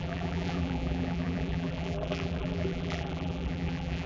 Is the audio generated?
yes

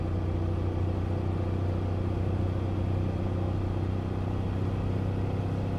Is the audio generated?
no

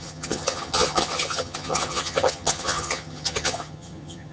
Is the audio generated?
yes